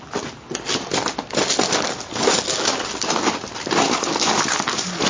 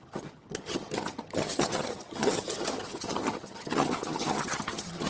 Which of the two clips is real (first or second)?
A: first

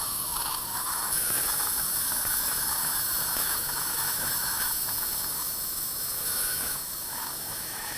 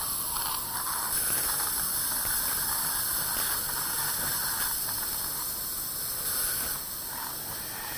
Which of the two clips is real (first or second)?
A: second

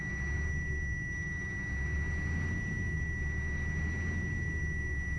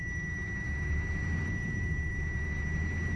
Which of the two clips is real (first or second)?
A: first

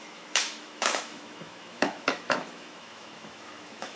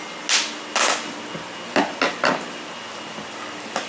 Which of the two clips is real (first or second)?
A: second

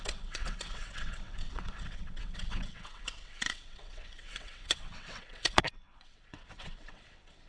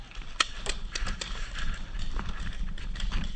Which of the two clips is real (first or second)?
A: second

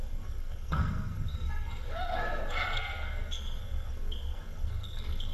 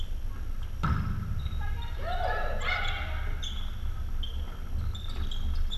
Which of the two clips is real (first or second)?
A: second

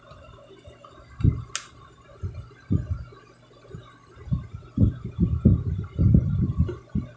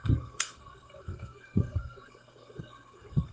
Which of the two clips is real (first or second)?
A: first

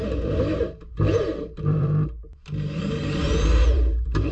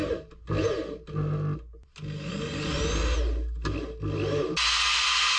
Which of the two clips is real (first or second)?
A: second